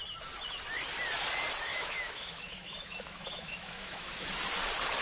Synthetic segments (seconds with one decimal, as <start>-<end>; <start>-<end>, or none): 1.7-4.4

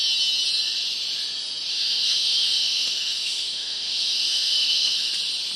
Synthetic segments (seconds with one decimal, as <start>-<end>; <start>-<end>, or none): 1.7-5.1

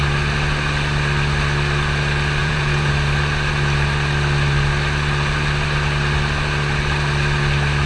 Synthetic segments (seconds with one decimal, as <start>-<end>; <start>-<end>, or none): 2.4-2.9

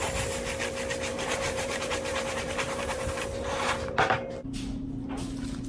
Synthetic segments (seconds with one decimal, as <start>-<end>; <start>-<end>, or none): 1.1-4.0

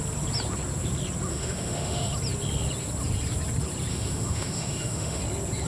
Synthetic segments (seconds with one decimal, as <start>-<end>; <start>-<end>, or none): 1.3-2.1; 3.9-5.2

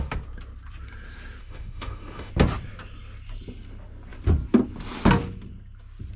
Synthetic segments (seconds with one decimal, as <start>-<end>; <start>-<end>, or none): 1.4-2.3

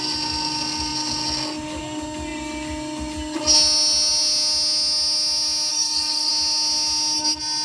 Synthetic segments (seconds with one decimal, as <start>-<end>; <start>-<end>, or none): 5.7-6.3

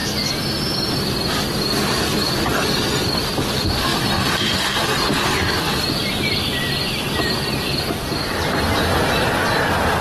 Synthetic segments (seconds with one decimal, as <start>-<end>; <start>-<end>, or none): 3.9-7.2